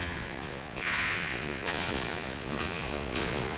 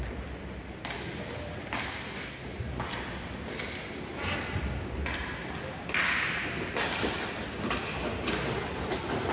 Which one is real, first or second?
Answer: second